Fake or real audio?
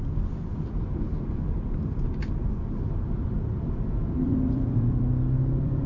fake